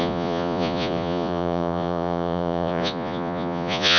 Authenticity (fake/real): fake